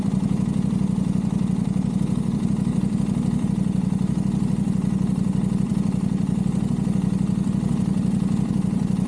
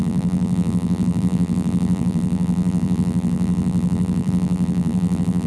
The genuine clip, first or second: first